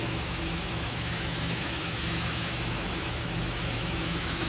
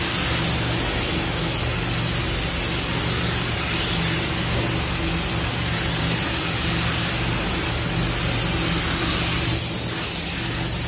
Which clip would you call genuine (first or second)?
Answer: second